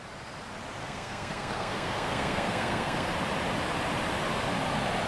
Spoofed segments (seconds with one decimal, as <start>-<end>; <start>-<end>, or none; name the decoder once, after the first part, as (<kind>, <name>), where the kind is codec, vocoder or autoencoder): 0.8-3.1 (codec, SNAC)